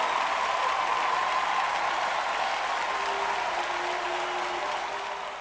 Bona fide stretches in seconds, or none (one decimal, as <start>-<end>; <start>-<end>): 0.0-5.4